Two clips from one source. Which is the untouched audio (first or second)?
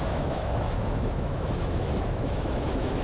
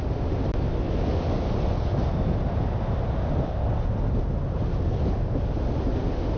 second